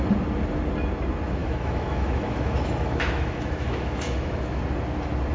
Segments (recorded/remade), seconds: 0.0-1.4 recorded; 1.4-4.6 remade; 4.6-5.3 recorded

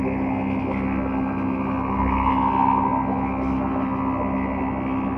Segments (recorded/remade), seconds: 0.0-5.2 recorded

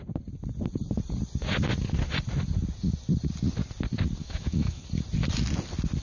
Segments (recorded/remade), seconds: 0.0-4.2 recorded; 4.2-4.8 remade; 4.8-6.0 recorded

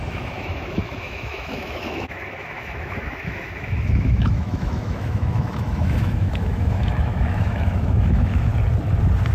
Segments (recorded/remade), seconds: 0.0-8.5 remade; 8.5-9.3 recorded

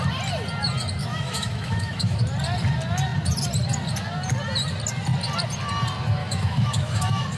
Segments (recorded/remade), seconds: 0.0-1.0 recorded; 1.0-2.2 remade; 2.2-6.2 recorded; 6.2-7.4 remade

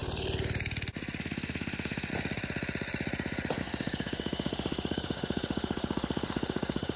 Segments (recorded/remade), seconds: 0.0-1.2 recorded; 1.2-2.1 remade; 2.1-3.6 recorded; 3.6-7.0 remade

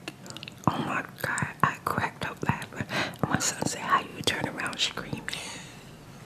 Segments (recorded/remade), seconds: 0.0-4.1 recorded; 4.1-4.6 remade; 4.6-6.2 recorded